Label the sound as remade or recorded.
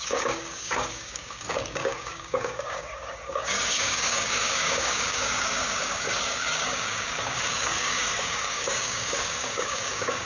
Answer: remade